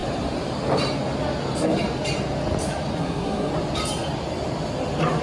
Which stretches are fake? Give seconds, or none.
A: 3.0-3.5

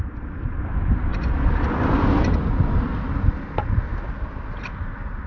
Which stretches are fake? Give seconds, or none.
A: none

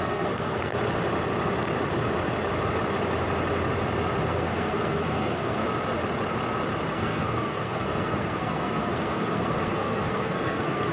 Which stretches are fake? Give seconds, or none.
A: 0.0-0.7; 4.2-5.6; 6.9-10.9